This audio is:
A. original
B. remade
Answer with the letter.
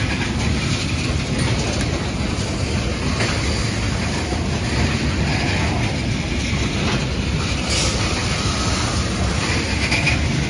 A